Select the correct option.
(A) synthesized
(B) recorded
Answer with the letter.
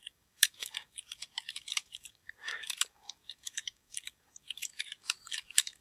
A